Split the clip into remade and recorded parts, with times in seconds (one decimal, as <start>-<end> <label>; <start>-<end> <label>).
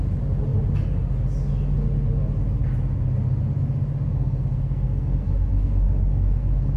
0.0-4.1 recorded; 4.1-6.8 remade